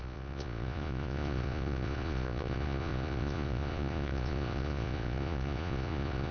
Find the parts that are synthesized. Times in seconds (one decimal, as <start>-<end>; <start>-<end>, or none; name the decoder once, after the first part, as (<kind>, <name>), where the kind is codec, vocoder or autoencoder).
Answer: 0.0-6.3 (vocoder, Vocos)